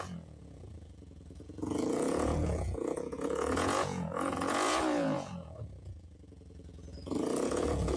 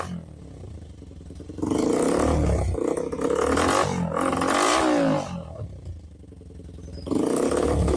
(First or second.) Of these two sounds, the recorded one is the second